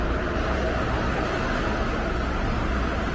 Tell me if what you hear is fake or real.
real